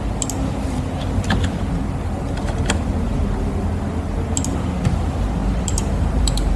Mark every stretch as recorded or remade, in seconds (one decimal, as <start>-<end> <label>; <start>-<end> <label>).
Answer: 0.0-5.4 recorded; 5.4-6.6 remade